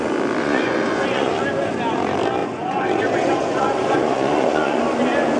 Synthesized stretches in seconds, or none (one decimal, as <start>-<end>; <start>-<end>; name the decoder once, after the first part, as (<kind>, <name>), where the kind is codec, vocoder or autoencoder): 0.4-1.3 (vocoder, Vocos); 2.4-4.8